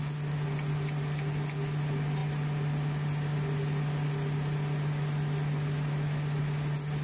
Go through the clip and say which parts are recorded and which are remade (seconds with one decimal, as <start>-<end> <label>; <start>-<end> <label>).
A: 0.0-7.0 recorded